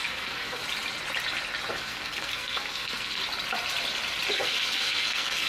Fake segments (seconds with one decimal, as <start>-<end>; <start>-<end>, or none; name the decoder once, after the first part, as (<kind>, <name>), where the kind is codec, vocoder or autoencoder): 0.0-0.6 (codec, SNAC); 1.7-3.2; 4.3-5.5